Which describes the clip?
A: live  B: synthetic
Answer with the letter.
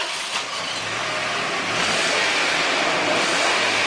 A